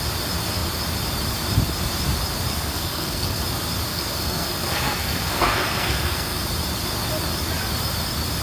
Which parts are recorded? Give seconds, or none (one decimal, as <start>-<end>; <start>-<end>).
0.0-2.5; 3.4-3.9; 6.4-8.4

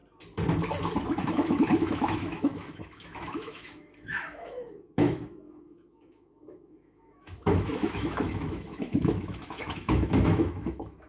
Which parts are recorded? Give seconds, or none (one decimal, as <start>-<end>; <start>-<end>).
0.0-1.3

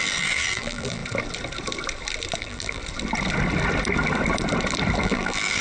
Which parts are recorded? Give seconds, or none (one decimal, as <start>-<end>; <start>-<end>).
1.0-2.4; 2.8-5.0

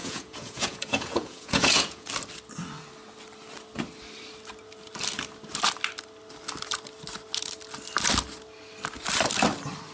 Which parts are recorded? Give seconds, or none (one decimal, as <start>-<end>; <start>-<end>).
2.1-9.9

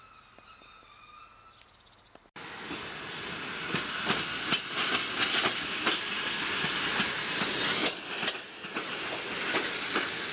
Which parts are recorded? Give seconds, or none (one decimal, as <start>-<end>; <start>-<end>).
0.0-10.3

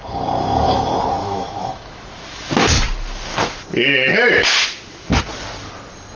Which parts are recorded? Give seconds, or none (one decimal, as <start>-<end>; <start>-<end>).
0.0-1.2; 2.5-3.3; 5.2-6.2